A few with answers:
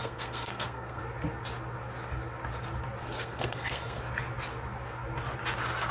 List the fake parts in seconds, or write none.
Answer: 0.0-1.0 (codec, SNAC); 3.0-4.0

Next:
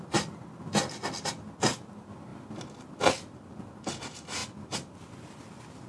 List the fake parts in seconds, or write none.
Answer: none

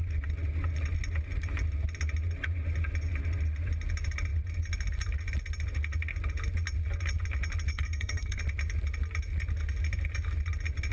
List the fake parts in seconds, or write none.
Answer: 7.7-8.4 (codec, SNAC)